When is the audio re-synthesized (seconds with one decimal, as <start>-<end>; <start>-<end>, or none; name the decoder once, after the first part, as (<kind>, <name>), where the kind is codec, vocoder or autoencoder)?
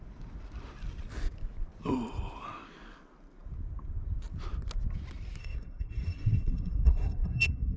5.4-7.8 (codec, SNAC)